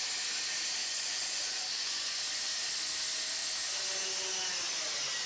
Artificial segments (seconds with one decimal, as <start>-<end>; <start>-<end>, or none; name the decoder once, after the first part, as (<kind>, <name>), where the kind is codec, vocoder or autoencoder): 0.8-2.2 (vocoder, Vocos)